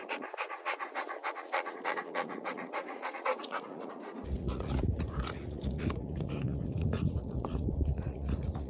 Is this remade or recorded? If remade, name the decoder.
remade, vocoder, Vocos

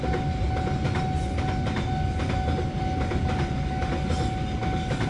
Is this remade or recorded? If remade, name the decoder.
recorded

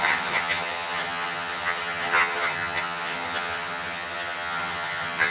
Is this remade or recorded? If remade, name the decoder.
remade, vocoder, HiFi-GAN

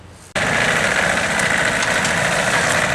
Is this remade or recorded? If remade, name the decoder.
recorded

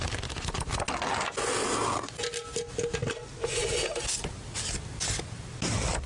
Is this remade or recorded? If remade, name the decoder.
recorded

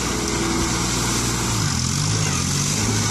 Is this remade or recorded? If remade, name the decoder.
recorded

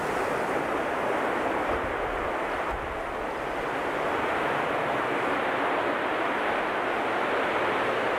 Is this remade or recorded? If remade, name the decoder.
recorded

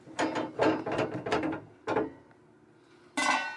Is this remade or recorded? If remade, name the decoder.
recorded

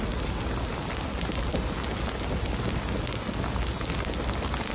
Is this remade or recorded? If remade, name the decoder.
recorded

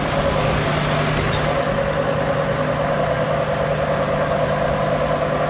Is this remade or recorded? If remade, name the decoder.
recorded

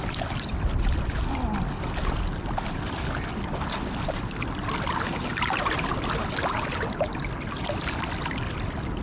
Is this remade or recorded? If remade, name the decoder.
recorded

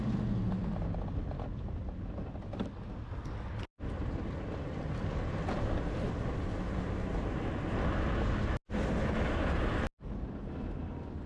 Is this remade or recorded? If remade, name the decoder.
recorded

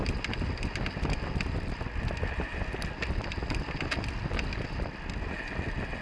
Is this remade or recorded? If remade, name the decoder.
recorded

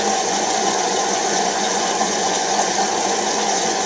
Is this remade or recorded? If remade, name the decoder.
remade, vocoder, Vocos